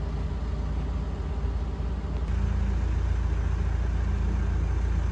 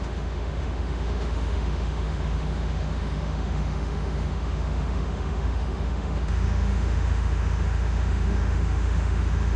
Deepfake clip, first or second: second